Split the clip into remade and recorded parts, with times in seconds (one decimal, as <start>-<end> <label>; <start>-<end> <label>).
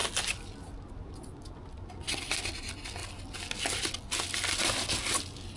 0.0-5.6 recorded